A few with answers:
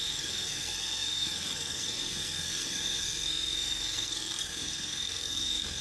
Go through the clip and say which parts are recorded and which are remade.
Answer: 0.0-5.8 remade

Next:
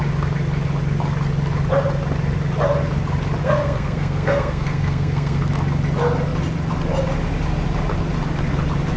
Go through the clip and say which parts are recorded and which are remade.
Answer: 0.0-3.4 recorded; 3.4-5.4 remade; 5.4-9.0 recorded

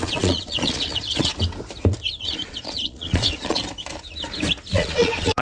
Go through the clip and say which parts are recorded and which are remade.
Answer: 0.0-1.3 remade; 1.3-2.2 recorded; 2.2-3.6 remade; 3.6-4.7 recorded; 4.7-5.4 remade

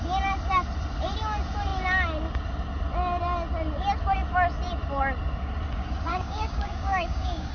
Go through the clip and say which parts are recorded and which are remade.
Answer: 0.0-6.1 recorded; 6.1-7.5 remade